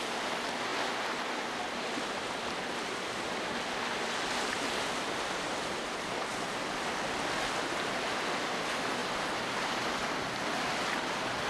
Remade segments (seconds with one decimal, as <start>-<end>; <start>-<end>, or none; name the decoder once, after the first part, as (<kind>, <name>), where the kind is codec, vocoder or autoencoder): none